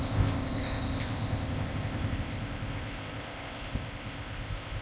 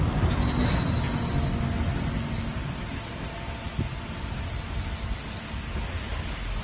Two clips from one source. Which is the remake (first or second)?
first